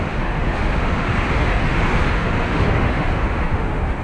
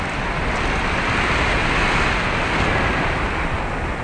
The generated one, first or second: first